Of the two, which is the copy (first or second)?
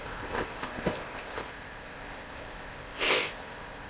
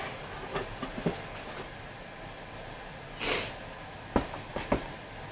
first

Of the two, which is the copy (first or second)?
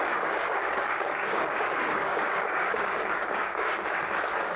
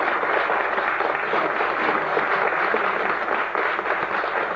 first